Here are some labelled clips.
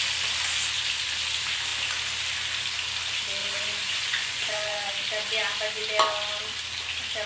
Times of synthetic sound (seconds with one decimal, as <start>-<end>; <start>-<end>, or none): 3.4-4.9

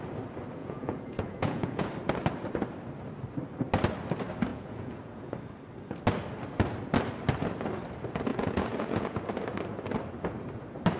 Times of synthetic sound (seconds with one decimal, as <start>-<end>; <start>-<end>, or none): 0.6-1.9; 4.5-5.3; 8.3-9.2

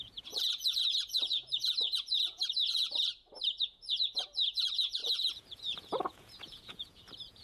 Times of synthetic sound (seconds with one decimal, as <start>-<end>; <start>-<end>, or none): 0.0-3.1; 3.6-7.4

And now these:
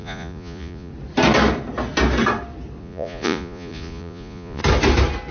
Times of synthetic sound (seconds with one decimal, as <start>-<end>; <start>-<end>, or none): 0.0-0.9; 2.8-4.6

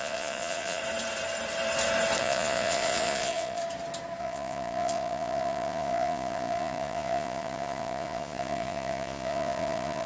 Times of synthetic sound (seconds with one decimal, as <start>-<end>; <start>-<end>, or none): 0.0-0.8; 2.2-3.6; 4.2-10.1

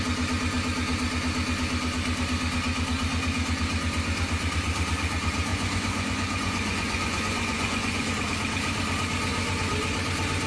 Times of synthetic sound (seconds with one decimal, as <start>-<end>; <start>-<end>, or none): 5.5-8.1

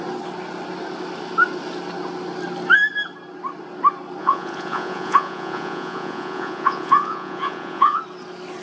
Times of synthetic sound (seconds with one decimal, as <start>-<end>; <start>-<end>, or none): 4.2-8.0